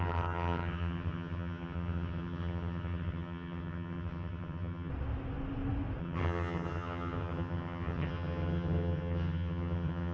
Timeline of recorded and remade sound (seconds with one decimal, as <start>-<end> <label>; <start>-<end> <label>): 0.0-4.9 remade; 4.9-6.0 recorded; 6.0-10.1 remade